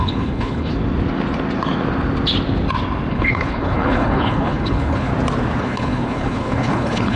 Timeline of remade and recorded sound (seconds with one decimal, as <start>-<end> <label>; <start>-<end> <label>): 0.0-0.7 remade; 0.7-3.1 recorded; 3.1-5.1 remade; 5.1-5.6 recorded; 5.6-7.2 remade